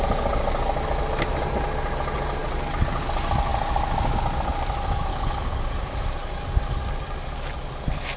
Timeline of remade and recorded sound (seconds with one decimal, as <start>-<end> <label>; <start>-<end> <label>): 0.0-5.1 recorded; 5.1-5.6 remade; 5.6-8.2 recorded